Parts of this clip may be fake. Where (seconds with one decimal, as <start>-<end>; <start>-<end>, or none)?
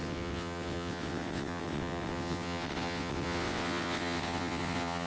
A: 0.0-5.1